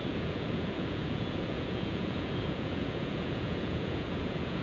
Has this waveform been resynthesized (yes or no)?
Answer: yes